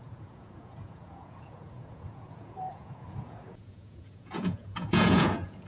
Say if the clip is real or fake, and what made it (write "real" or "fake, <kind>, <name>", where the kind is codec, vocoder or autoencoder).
fake, vocoder, Vocos